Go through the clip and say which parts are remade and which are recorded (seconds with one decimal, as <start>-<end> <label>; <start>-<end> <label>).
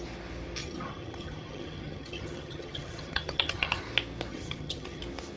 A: 0.0-0.6 recorded; 0.6-3.8 remade; 3.8-4.3 recorded; 4.3-5.0 remade; 5.0-5.4 recorded